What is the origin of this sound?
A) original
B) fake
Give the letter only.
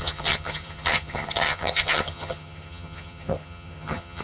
B